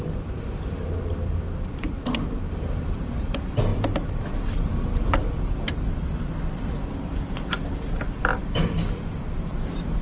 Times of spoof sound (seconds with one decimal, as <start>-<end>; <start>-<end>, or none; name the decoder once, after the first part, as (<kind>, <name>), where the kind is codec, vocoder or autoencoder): 0.0-10.0 (vocoder, BigVGAN v2)